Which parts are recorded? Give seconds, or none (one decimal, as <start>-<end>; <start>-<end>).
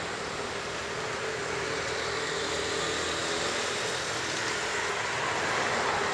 0.0-6.1